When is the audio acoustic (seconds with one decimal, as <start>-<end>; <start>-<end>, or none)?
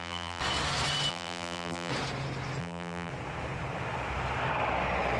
0.4-1.1; 1.9-2.6; 3.1-5.2